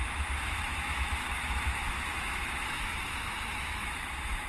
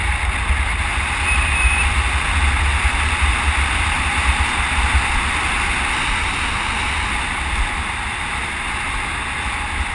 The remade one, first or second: first